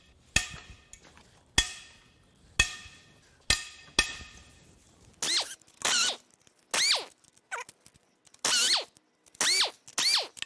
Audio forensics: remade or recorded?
recorded